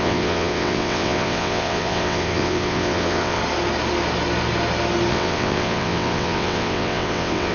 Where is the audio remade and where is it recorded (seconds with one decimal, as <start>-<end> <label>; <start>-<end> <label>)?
0.0-3.4 remade; 3.4-5.1 recorded; 5.1-7.5 remade